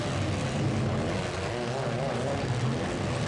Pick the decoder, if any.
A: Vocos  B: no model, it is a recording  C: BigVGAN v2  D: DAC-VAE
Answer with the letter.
B